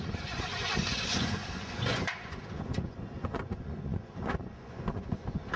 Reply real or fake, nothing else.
fake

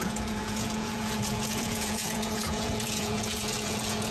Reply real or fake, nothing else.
fake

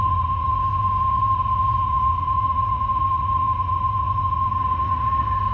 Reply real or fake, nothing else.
fake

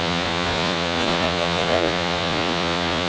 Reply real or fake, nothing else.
fake